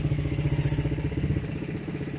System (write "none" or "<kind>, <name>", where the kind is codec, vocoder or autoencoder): none